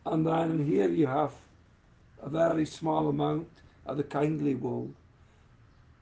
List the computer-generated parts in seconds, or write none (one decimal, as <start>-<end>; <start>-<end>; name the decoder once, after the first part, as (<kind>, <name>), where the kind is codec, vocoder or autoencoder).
0.5-2.0 (codec, DAC); 2.5-3.0